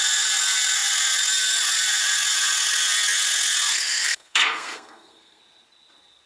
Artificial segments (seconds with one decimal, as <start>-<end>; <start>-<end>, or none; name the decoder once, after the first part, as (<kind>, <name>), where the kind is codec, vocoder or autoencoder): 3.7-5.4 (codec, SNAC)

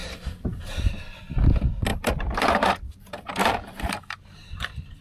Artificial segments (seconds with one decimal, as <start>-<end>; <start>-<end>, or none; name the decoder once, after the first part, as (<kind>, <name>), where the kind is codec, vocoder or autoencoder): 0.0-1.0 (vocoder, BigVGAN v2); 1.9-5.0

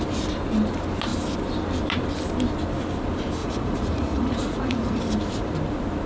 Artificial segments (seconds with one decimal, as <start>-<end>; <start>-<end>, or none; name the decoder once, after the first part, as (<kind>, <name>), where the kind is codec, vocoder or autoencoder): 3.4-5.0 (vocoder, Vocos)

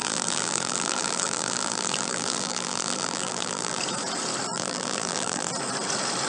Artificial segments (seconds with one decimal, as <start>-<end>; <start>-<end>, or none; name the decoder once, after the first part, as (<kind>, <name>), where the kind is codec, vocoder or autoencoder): 0.0-3.8 (vocoder, BigVGAN v2); 4.5-5.5

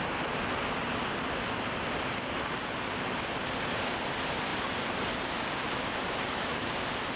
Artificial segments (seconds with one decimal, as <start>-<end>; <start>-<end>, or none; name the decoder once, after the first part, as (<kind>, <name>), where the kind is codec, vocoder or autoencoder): none

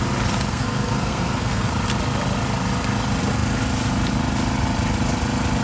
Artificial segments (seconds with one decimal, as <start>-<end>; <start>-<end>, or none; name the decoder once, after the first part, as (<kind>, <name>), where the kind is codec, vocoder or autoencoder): 0.5-1.7 (codec, SNAC)

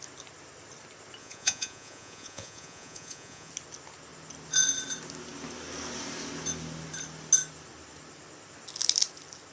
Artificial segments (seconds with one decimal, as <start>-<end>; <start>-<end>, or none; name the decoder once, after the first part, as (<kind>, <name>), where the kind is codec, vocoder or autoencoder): 1.2-3.5 (vocoder, Vocos)